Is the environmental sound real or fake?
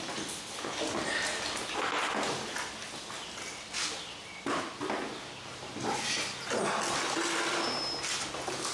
real